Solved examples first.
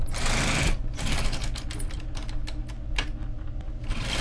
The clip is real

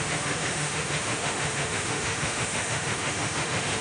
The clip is fake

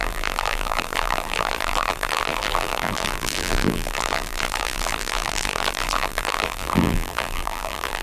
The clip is fake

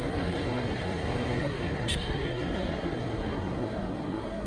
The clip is fake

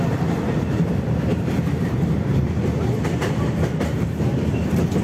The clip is fake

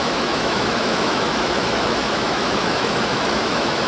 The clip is fake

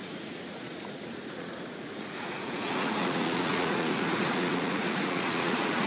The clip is fake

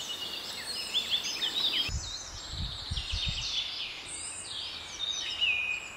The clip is real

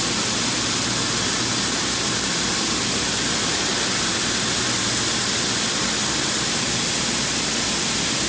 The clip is real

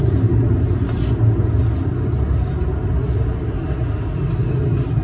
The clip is real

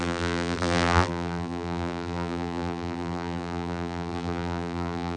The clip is fake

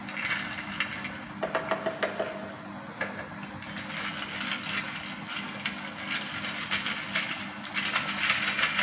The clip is real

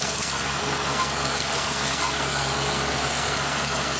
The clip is fake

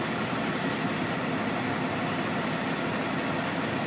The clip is real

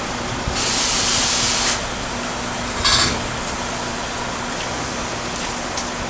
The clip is real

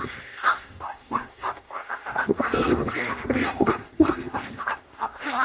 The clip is fake